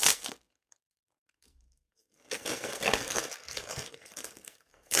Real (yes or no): no